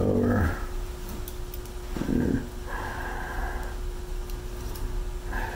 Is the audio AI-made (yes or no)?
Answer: no